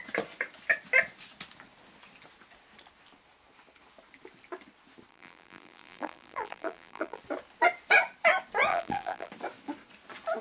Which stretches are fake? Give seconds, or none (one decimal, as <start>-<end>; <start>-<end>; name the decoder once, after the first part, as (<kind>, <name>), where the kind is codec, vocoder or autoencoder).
5.1-7.2 (vocoder, BigVGAN v2); 8.7-9.3